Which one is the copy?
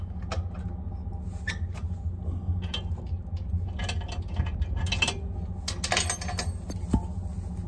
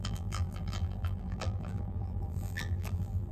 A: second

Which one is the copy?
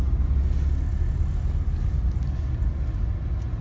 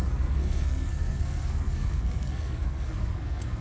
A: second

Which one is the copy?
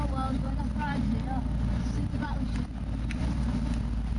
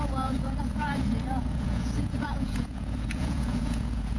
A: second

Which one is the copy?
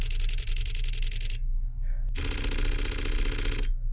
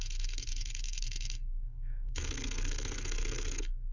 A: second